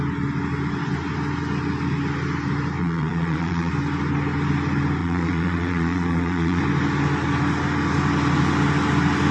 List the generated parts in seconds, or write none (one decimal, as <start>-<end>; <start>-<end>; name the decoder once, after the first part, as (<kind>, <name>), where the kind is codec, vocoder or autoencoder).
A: 2.8-3.7 (vocoder, Vocos); 5.0-6.6